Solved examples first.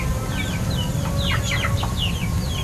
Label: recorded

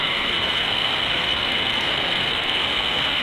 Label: remade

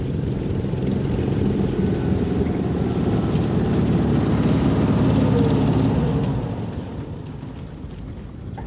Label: recorded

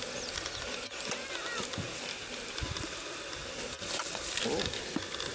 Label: recorded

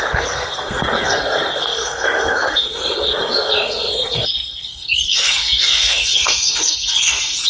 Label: remade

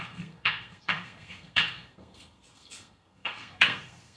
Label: remade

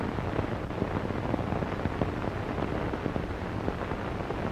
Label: recorded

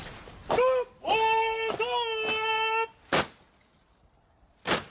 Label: recorded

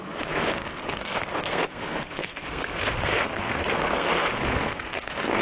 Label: remade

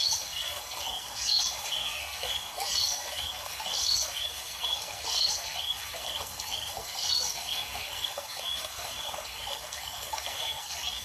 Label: remade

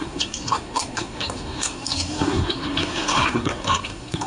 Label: remade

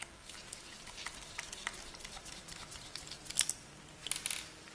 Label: recorded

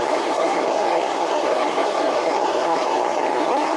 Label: remade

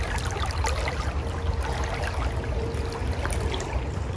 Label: recorded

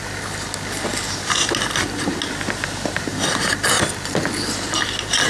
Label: recorded